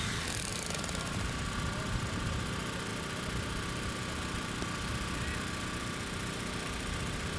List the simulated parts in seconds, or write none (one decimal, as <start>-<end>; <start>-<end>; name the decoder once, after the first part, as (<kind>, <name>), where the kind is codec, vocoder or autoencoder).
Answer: 0.5-1.2 (vocoder, BigVGAN v2); 2.9-7.4